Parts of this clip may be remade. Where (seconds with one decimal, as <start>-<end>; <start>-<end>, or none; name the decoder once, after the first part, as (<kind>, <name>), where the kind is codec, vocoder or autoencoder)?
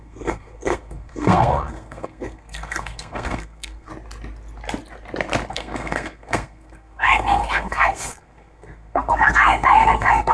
0.0-3.9 (codec, SNAC); 5.5-10.3